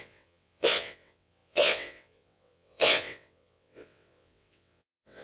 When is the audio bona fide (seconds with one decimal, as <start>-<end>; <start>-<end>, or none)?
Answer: none